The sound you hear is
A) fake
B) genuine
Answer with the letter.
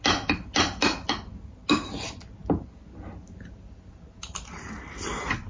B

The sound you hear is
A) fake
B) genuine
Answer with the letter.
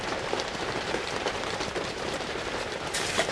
A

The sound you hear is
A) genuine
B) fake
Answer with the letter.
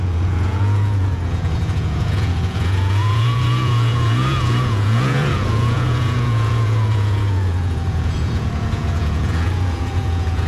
B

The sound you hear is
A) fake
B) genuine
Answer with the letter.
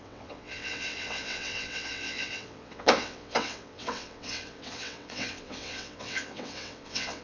A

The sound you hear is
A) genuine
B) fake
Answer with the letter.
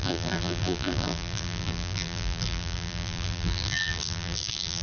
B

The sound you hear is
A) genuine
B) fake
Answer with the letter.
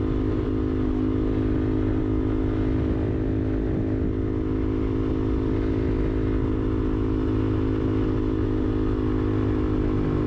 A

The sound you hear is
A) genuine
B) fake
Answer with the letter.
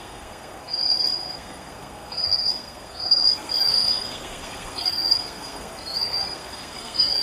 B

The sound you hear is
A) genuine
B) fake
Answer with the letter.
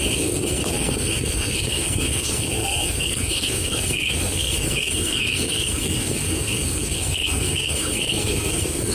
B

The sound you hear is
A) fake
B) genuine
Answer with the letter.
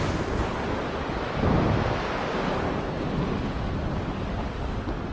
B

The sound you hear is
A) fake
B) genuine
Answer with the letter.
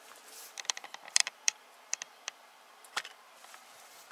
A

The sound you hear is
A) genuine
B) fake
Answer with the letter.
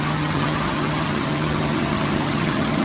B